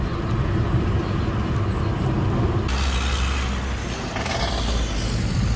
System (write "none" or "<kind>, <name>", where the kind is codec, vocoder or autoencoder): none